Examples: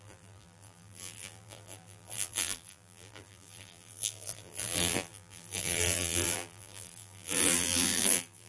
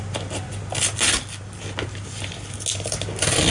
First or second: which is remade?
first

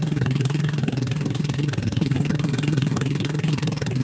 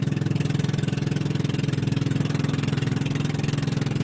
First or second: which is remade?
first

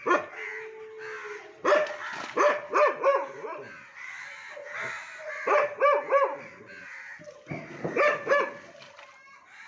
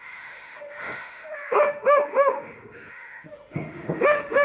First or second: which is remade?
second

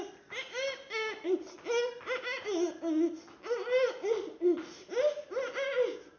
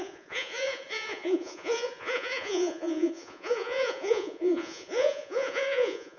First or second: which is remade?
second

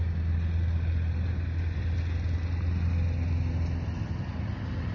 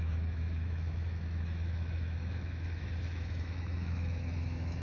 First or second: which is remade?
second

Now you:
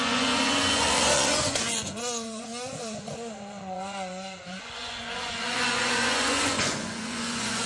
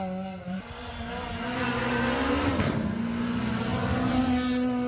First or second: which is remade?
first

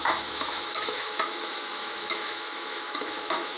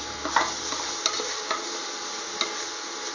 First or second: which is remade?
first